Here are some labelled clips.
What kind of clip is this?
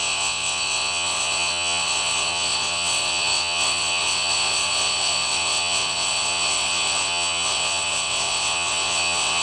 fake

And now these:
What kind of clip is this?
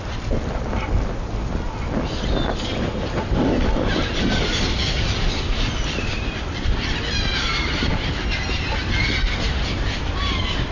real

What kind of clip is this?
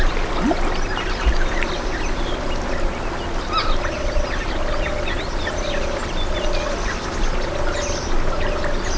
real